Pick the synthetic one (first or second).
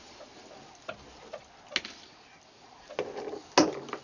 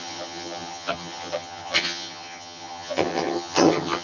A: second